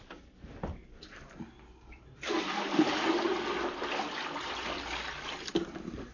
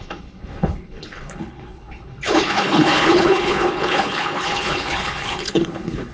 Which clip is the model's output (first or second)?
second